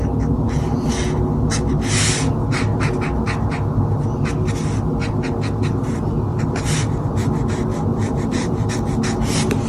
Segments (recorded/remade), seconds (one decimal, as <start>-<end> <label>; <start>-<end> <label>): 0.0-6.3 recorded; 6.3-7.3 remade; 7.3-7.9 recorded; 7.9-8.7 remade; 8.7-9.7 recorded